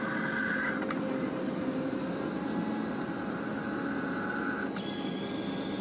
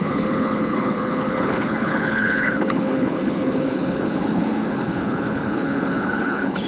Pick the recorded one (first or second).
first